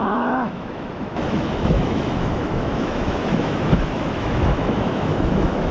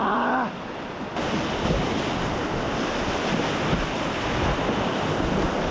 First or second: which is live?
second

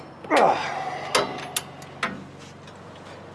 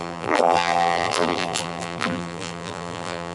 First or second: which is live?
first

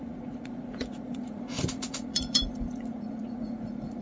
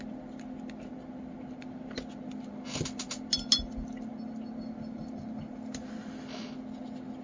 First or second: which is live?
second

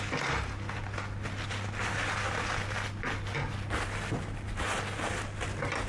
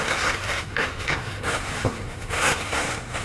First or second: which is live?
first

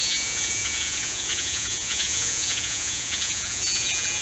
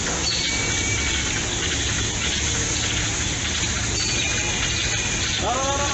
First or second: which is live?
second